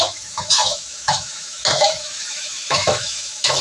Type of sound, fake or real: fake